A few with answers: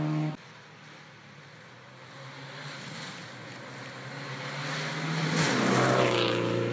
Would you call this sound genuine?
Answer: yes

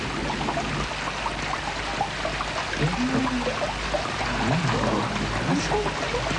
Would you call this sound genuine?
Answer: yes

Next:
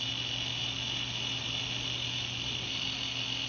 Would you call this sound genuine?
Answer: yes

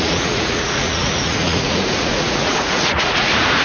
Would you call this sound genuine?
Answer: no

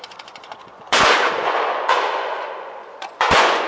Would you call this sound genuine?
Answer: no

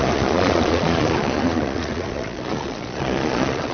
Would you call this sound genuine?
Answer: no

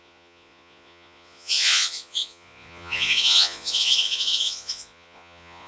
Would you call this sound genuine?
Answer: no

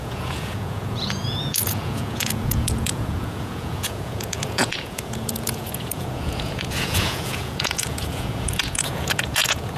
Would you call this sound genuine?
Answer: no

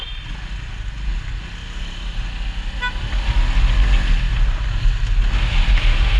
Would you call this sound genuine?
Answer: yes